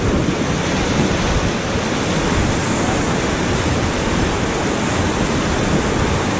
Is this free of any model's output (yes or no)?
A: yes